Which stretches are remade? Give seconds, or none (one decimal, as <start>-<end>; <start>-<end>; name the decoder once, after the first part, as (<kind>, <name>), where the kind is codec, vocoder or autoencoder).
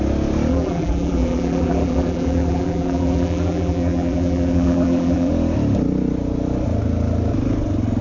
0.5-5.3 (vocoder, BigVGAN v2)